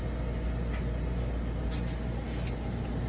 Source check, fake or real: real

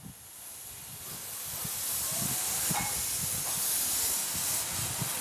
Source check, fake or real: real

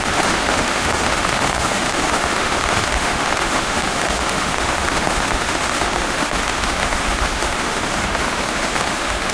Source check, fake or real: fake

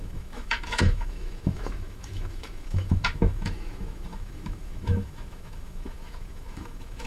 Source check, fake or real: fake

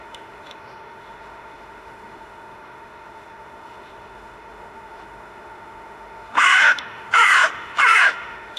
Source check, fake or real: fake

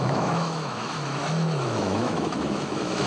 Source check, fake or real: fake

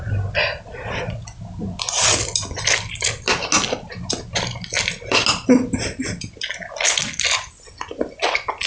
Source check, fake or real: real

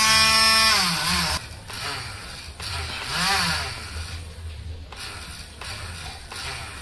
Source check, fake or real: real